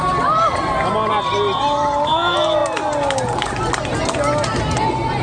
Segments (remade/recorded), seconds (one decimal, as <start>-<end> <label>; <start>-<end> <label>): 0.0-5.2 recorded